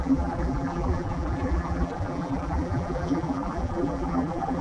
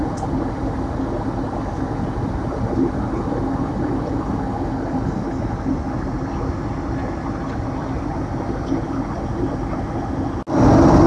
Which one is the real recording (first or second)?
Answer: second